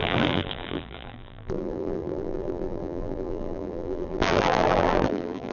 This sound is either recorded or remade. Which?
remade